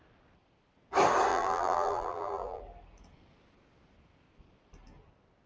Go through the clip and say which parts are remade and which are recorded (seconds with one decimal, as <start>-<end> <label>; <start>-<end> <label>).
0.0-1.3 recorded; 1.3-2.6 remade; 2.6-5.5 recorded